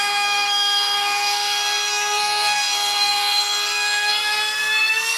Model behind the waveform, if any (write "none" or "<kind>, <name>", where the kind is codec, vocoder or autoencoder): codec, SNAC